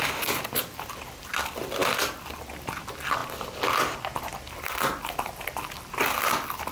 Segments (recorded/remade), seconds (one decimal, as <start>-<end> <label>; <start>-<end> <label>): 0.0-6.7 recorded